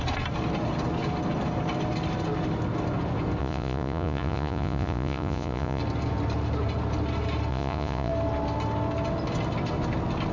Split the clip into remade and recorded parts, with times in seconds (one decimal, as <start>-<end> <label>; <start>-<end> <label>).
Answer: 0.0-3.4 recorded; 3.4-5.8 remade; 5.8-7.5 recorded; 7.5-8.1 remade; 8.1-10.3 recorded